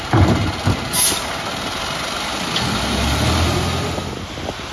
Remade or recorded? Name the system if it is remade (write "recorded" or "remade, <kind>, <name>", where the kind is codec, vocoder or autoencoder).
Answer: recorded